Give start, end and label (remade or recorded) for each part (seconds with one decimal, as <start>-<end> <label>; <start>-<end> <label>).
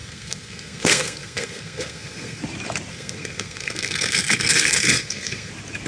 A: 0.0-2.4 remade; 2.4-2.9 recorded; 2.9-5.5 remade; 5.5-5.9 recorded